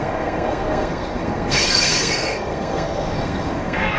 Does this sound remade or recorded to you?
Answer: remade